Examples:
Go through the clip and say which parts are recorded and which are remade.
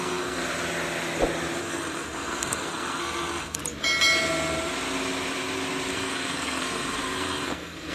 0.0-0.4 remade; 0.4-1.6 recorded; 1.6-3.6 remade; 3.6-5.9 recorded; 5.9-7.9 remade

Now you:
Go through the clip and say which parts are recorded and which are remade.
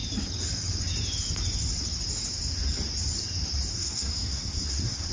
0.0-3.7 recorded; 3.7-5.1 remade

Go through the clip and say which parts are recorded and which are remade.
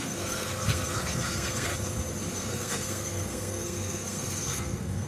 0.0-1.7 remade; 1.7-2.3 recorded; 2.3-5.1 remade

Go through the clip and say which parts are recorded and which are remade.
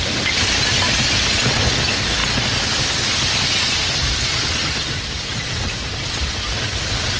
0.0-7.2 recorded